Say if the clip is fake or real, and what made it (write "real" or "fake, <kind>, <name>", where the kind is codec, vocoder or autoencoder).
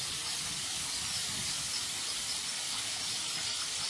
real